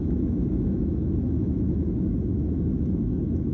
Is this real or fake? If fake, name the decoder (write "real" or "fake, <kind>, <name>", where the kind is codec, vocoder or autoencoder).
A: fake, autoencoder, DAC-VAE